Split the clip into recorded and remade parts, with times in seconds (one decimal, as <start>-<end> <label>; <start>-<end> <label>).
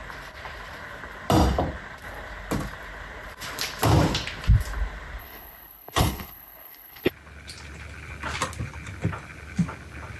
0.0-5.2 recorded; 5.2-7.1 remade; 7.1-10.2 recorded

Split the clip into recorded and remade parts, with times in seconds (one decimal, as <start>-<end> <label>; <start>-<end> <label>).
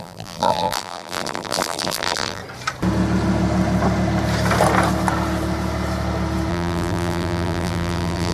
0.0-2.4 remade; 2.4-6.5 recorded; 6.5-8.3 remade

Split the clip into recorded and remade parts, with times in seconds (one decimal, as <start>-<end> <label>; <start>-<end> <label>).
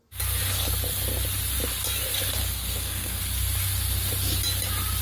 0.0-2.4 recorded; 2.4-3.2 remade; 3.2-5.0 recorded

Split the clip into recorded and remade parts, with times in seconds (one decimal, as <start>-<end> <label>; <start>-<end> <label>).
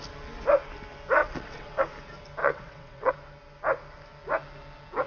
0.0-1.2 recorded; 1.2-1.8 remade; 1.8-2.4 recorded; 2.4-3.1 remade; 3.1-5.1 recorded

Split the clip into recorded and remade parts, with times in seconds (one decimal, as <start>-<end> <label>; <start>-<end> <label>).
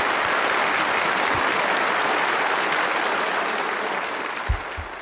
0.0-5.0 recorded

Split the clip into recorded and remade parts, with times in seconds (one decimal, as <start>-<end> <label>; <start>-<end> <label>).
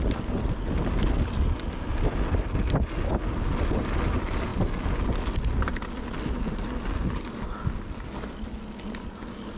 0.0-9.6 recorded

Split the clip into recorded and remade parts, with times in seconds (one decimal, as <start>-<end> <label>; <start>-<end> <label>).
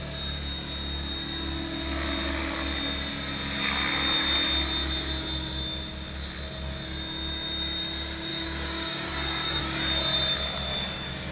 0.0-8.3 recorded; 8.3-9.6 remade; 9.6-10.7 recorded; 10.7-11.3 remade